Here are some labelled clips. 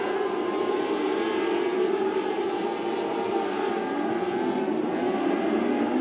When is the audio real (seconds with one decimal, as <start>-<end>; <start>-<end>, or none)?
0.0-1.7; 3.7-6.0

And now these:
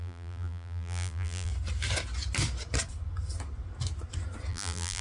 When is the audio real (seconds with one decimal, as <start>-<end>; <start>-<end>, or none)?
1.5-4.5

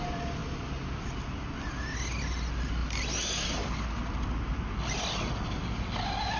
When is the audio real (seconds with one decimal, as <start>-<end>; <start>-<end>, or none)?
0.0-6.4

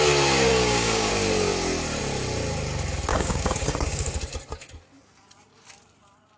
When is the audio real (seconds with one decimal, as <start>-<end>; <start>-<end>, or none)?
0.0-0.5; 1.1-3.1; 4.2-6.4

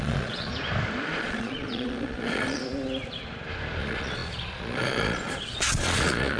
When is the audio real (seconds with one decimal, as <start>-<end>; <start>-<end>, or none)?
0.5-1.2; 2.6-3.8

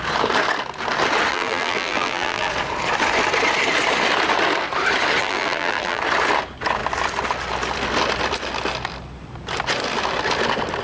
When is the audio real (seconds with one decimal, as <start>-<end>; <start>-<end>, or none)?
0.0-1.3; 2.5-5.2; 6.0-10.8

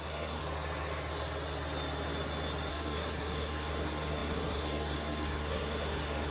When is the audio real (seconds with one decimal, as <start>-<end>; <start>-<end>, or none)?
0.4-2.7